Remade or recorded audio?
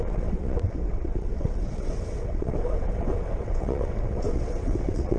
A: remade